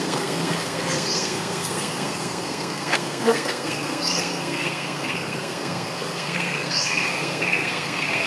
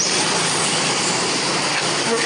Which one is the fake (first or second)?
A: first